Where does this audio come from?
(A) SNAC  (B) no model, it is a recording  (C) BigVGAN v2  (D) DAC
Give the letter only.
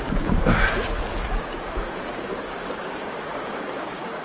D